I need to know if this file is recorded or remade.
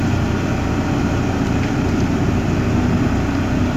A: recorded